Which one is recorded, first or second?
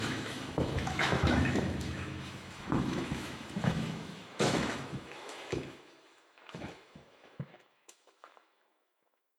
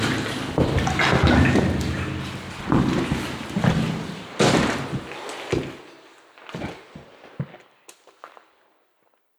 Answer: second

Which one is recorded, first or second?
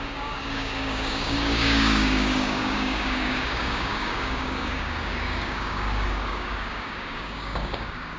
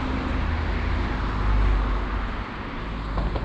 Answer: second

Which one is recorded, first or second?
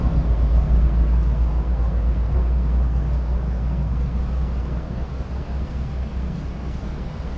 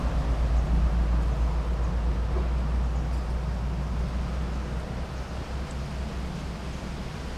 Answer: second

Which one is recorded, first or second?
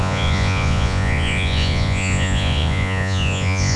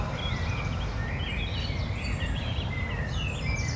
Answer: second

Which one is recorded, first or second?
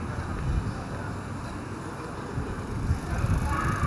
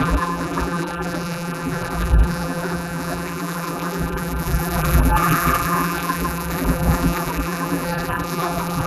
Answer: first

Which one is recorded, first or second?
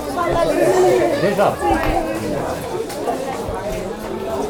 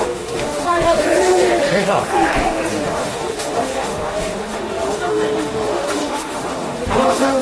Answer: first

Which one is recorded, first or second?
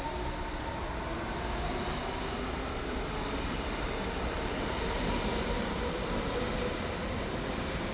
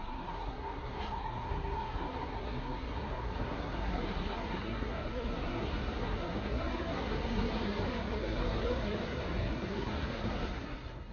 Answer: first